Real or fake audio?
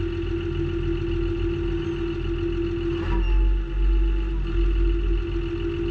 real